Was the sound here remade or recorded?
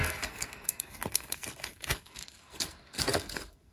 remade